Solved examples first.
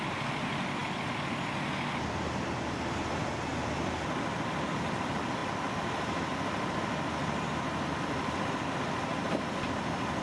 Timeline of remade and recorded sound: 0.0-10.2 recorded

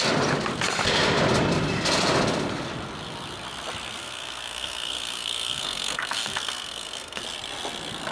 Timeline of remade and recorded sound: 0.0-4.0 recorded; 4.0-7.2 remade; 7.2-8.1 recorded

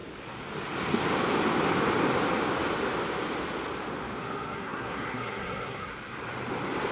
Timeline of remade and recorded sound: 0.0-4.2 recorded; 4.2-5.9 remade; 5.9-6.9 recorded

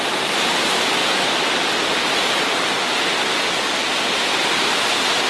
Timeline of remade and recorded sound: 0.0-5.3 recorded

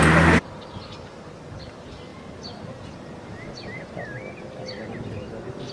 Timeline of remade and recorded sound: 0.0-5.7 recorded